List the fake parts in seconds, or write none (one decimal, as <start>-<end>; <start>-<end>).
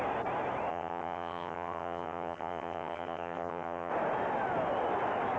0.7-3.9